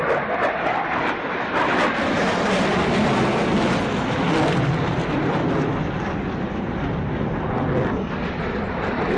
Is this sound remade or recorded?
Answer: recorded